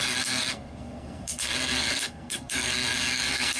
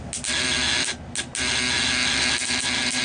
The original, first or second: second